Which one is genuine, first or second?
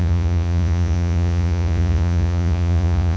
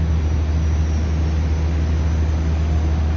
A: second